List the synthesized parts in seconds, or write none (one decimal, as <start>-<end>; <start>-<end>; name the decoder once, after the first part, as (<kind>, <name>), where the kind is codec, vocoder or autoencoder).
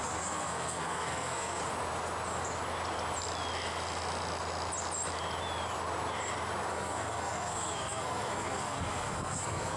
0.0-1.6 (codec, SNAC); 6.7-9.8